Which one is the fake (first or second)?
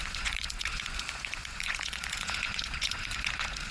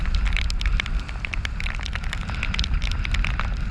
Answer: first